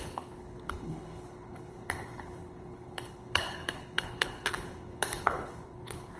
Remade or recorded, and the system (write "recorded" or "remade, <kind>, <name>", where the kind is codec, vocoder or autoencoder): remade, codec, HILCodec